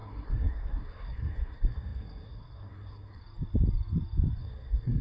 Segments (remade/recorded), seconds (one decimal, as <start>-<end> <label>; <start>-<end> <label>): 0.0-3.2 remade; 3.2-4.4 recorded; 4.4-5.0 remade